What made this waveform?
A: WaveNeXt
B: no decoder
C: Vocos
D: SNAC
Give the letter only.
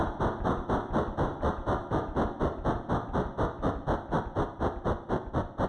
B